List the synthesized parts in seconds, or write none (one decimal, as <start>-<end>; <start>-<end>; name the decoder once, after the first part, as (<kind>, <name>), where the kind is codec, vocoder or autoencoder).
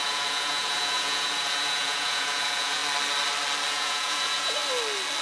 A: 0.0-2.8 (vocoder, Vocos); 3.7-4.6